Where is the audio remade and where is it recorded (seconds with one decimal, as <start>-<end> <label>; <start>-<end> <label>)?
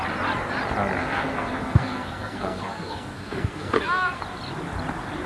0.0-1.0 recorded; 1.0-4.2 remade; 4.2-5.3 recorded